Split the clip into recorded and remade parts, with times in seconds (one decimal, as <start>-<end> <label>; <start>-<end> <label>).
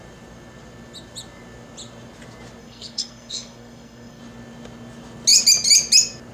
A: 0.0-2.6 recorded; 2.6-4.2 remade; 4.2-6.3 recorded